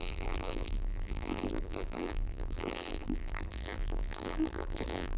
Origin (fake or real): fake